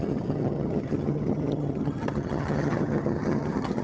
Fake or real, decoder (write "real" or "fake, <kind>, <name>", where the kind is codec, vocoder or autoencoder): fake, vocoder, HiFi-GAN